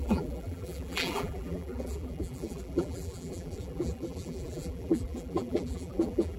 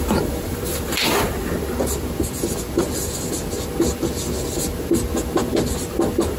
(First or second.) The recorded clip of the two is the second